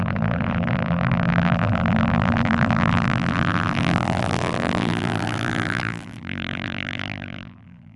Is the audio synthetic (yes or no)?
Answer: yes